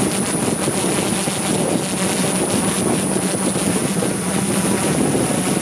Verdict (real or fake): real